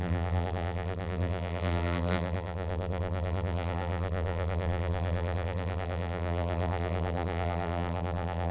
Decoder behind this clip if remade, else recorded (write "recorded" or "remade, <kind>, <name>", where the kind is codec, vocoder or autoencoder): remade, vocoder, BigVGAN v2